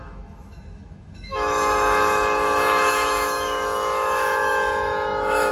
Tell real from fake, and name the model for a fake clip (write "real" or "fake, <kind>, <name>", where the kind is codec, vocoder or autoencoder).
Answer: fake, autoencoder, DAC-VAE